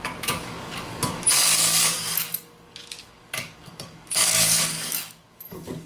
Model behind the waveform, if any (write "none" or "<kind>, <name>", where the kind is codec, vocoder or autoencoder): codec, DAC